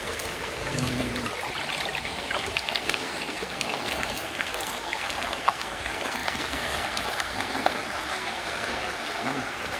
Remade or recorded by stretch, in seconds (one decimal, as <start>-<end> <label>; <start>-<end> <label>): 0.0-1.1 remade; 1.1-2.0 recorded; 2.0-9.8 remade